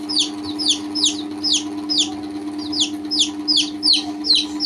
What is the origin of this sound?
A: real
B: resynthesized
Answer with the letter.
A